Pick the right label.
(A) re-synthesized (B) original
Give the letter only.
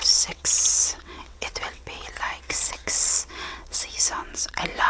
A